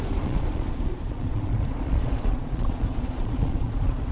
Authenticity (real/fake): fake